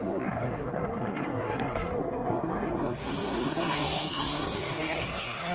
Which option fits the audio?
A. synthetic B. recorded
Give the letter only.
A